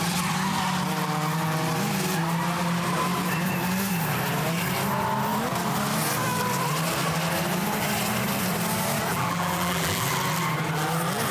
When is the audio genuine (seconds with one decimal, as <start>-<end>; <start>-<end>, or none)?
0.0-9.1; 10.1-11.3